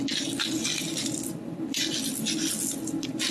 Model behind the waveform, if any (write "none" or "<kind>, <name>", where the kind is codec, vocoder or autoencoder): none